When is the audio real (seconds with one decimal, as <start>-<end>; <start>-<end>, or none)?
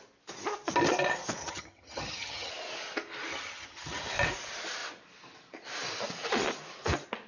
0.0-1.4; 2.5-3.3; 4.1-7.3